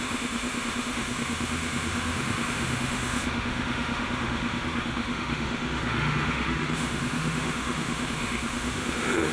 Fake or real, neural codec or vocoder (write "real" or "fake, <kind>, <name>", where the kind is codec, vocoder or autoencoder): fake, autoencoder, DAC-VAE